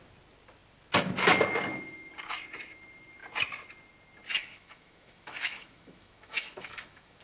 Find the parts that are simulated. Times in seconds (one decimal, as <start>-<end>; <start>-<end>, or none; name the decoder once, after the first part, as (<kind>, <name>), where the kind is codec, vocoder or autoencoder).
4.3-7.2 (autoencoder, DAC-VAE)